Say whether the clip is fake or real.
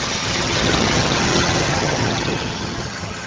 fake